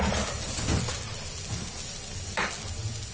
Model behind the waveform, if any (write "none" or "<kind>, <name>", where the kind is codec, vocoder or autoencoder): none